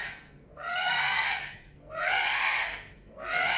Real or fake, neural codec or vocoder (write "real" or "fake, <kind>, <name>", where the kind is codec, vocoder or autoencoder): fake, codec, SNAC